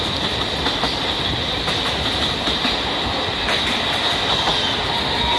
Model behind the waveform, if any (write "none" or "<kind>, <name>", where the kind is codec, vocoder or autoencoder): none